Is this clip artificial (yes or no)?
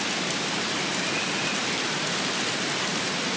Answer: no